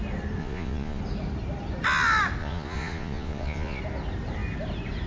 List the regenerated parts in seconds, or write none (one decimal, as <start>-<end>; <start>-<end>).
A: 0.4-1.0; 2.4-3.8